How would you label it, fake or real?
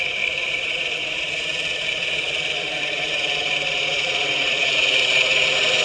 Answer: fake